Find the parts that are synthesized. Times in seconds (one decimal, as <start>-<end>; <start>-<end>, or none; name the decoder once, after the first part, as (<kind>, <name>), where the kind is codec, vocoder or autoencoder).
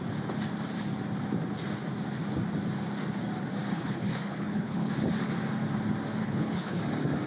3.7-4.9 (codec, HILCodec); 6.2-6.8